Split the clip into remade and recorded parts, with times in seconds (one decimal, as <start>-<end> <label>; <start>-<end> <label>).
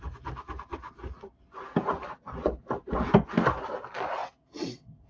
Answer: 0.0-4.2 recorded; 4.2-5.1 remade